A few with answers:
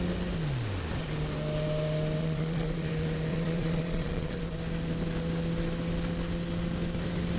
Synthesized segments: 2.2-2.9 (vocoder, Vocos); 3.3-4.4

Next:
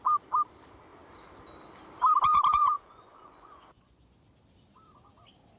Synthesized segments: 2.5-4.3 (vocoder, Vocos)

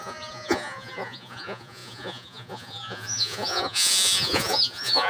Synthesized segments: 0.0-5.1 (vocoder, Vocos)

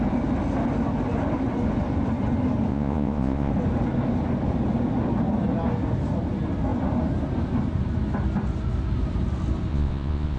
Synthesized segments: 2.7-3.5 (vocoder, Vocos); 9.7-10.4

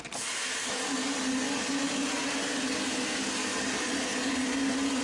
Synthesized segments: none

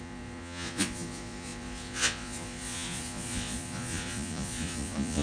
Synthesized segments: 0.0-5.2 (vocoder, Vocos)